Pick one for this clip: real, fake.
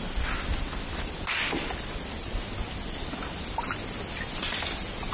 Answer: real